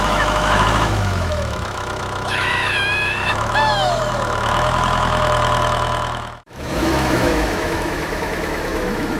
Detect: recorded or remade remade